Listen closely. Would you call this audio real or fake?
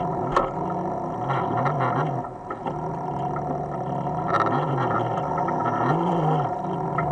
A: real